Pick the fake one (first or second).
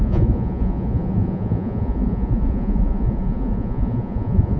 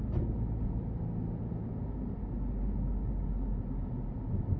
first